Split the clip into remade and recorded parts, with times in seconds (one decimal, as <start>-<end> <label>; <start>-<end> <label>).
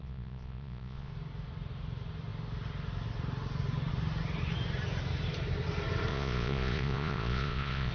0.0-1.1 remade; 1.1-6.1 recorded; 6.1-7.9 remade